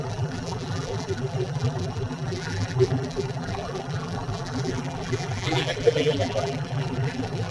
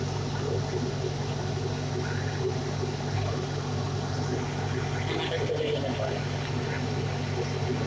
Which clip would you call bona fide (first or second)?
second